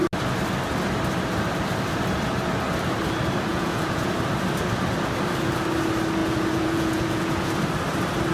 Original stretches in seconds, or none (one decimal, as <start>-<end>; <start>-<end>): 0.0-3.5; 4.1-6.2; 7.5-8.3